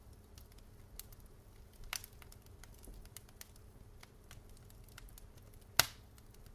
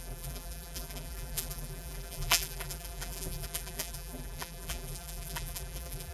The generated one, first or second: second